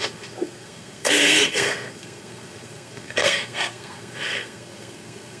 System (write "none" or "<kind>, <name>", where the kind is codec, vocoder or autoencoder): codec, SNAC